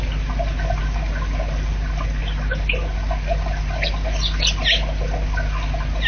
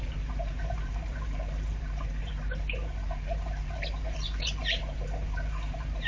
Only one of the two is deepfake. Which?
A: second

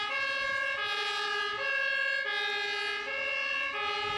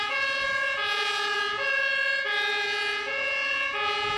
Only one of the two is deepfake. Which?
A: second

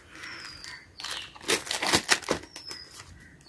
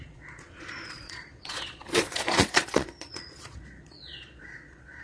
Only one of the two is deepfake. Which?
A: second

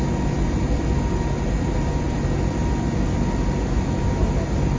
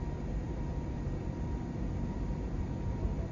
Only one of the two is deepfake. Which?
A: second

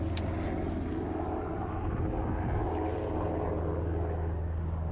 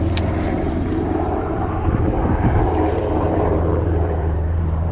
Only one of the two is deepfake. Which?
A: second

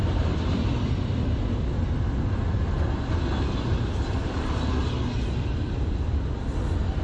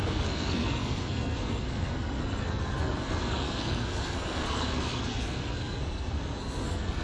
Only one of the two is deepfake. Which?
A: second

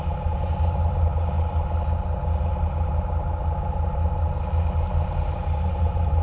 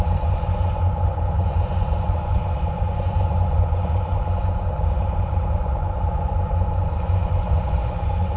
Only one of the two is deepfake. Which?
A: second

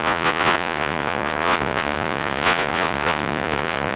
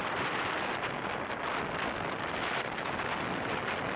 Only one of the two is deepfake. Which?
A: first